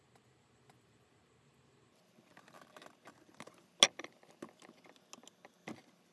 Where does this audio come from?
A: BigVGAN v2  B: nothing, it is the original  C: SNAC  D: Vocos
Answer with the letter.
B